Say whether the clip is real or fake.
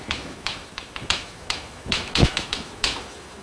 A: fake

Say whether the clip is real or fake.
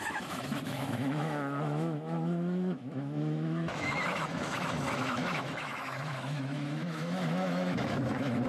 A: fake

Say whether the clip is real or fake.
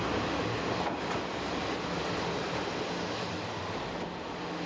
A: real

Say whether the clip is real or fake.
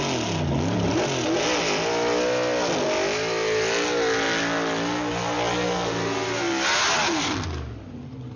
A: real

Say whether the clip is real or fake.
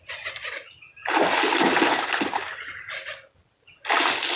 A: real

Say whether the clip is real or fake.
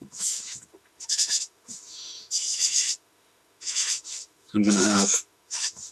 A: fake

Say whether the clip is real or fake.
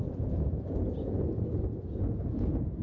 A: fake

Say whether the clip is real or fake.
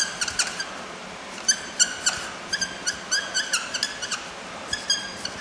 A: real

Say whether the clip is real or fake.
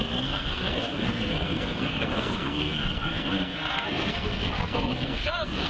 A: fake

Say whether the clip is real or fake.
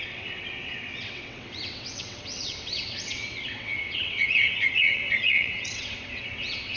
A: fake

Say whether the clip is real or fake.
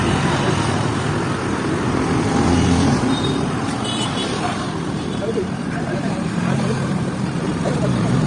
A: fake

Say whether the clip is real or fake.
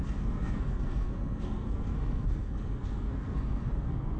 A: fake